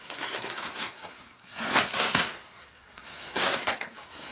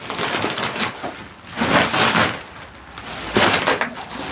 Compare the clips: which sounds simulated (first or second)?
first